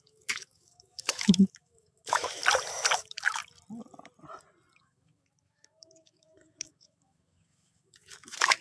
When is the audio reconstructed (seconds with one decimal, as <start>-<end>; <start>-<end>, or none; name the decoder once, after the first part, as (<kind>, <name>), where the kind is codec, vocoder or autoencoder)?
0.0-2.4 (autoencoder, DAC-VAE); 3.0-3.4; 4.8-8.6